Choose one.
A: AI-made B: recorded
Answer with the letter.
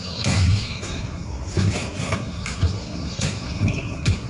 A